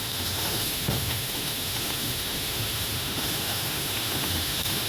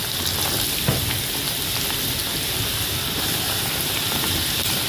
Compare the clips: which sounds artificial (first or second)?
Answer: first